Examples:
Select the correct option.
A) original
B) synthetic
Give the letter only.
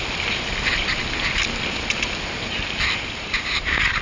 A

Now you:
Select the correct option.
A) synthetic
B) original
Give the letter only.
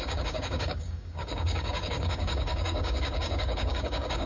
A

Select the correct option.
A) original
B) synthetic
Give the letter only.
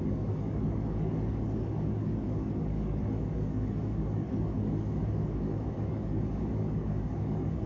B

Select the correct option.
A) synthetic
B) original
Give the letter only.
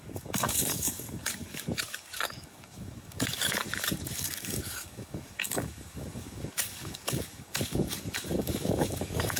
A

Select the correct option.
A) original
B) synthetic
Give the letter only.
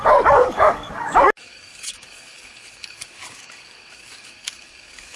B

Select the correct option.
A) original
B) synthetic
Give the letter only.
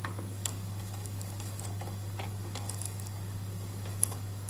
B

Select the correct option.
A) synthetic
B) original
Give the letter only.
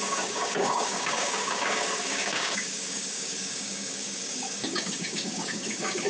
A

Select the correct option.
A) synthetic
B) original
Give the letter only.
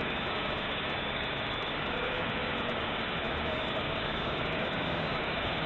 A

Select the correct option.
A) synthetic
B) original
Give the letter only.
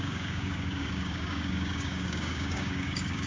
A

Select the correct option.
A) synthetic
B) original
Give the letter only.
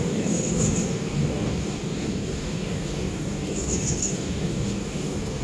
A